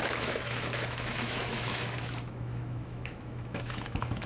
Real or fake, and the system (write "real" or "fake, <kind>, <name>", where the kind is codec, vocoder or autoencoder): fake, autoencoder, DAC-VAE